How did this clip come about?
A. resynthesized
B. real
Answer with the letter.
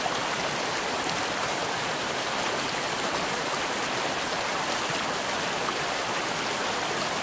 B